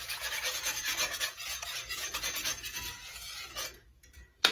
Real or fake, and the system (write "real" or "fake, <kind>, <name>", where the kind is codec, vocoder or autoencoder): fake, vocoder, Vocos